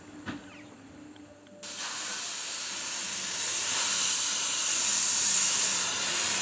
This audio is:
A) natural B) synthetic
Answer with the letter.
A